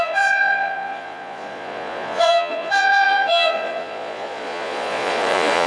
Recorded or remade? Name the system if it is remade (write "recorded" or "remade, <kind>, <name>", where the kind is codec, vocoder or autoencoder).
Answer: remade, vocoder, Vocos